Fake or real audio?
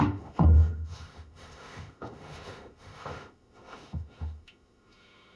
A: fake